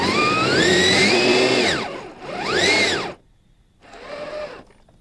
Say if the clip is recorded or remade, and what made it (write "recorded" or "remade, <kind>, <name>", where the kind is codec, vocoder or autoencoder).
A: recorded